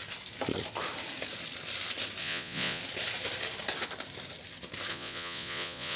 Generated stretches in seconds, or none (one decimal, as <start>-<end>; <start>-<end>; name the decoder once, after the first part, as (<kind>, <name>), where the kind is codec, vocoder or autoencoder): 2.2-2.8 (vocoder, Vocos); 4.9-6.0